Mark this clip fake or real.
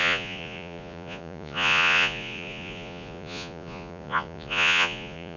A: fake